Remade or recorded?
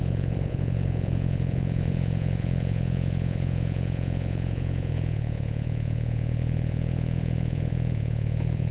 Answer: remade